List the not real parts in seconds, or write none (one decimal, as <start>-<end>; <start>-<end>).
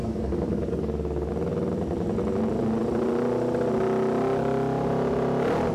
0.0-1.3